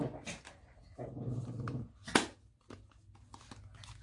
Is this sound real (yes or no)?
yes